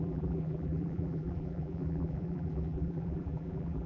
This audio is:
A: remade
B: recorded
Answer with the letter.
A